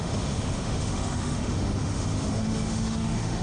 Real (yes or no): no